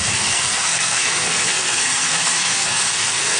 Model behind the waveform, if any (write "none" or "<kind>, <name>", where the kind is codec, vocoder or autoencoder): codec, SNAC